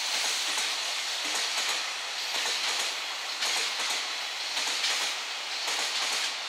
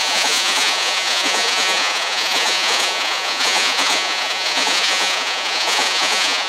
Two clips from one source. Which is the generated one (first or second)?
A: second